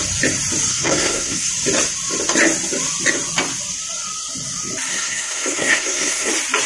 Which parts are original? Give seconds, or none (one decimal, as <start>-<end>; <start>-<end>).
0.0-0.7; 1.5-4.9; 6.3-6.7